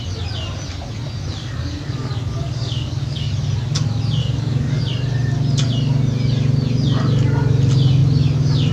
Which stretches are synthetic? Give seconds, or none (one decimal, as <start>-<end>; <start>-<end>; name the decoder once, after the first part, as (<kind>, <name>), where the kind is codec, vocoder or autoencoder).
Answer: 1.4-3.3 (codec, DAC); 4.2-4.8